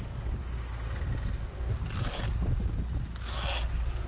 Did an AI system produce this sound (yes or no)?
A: no